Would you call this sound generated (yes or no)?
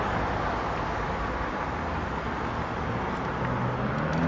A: no